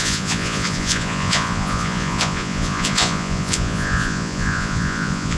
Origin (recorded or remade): remade